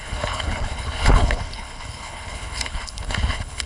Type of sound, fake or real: fake